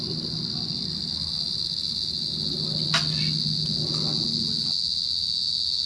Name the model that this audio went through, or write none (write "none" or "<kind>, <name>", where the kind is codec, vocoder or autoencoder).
none